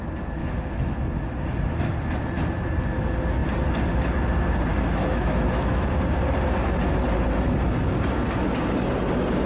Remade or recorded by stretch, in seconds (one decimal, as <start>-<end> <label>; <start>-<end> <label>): 0.0-0.4 recorded; 0.4-1.0 remade; 1.0-4.7 recorded; 4.7-5.9 remade; 5.9-9.5 recorded